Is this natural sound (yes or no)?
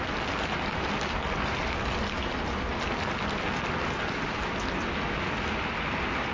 yes